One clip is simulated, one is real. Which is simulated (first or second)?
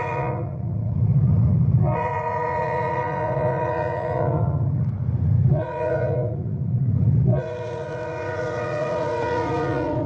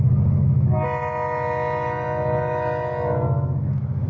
first